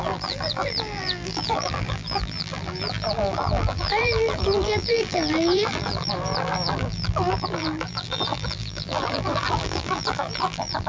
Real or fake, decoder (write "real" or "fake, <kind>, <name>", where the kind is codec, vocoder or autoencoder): fake, vocoder, BigVGAN v2